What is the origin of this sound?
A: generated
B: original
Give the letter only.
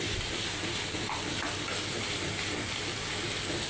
B